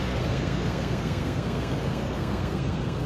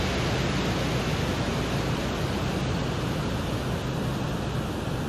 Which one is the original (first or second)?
second